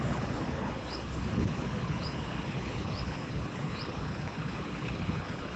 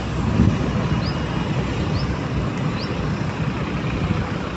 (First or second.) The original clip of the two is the second